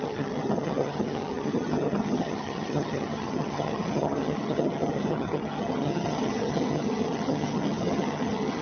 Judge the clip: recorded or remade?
remade